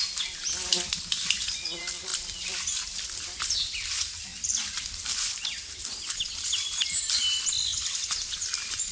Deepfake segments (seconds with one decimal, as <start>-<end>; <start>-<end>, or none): 0.0-4.3; 4.9-8.9